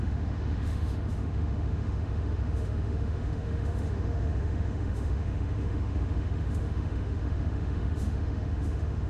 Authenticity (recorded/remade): remade